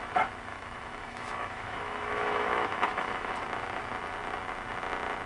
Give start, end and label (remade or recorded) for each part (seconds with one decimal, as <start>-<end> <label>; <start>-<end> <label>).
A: 0.0-0.5 recorded; 0.5-3.3 remade; 3.3-5.3 recorded